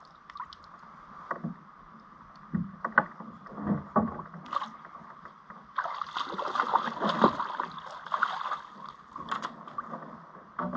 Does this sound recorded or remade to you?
recorded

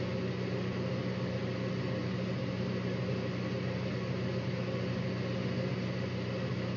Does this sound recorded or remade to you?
recorded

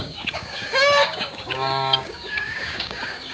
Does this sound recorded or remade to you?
remade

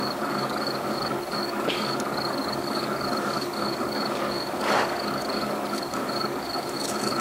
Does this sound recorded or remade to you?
remade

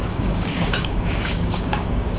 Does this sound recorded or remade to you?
remade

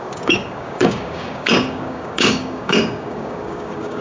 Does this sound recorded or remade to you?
remade